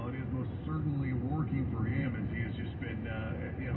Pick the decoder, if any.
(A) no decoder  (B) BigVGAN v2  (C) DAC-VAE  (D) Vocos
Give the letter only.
A